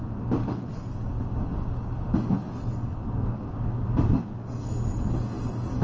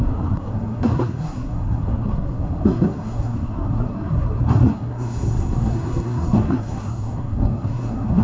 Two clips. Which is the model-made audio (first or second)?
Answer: second